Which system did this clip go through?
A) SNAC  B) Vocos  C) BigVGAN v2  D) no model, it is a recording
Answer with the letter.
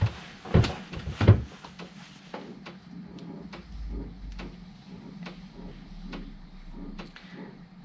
D